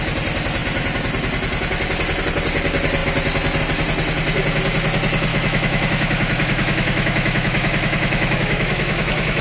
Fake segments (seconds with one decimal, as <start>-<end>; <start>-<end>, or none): 5.3-9.4